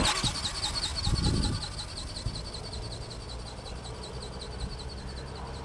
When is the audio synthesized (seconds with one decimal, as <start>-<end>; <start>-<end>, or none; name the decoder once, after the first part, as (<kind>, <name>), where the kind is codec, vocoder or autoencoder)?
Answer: none